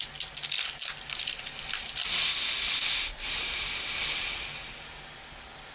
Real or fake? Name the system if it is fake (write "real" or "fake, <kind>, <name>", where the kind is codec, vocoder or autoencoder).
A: real